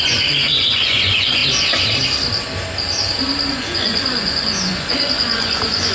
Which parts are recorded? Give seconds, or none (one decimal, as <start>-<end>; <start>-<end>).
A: 1.4-3.5